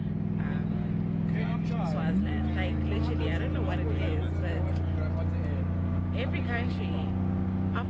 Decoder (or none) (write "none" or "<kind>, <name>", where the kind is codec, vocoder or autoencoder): none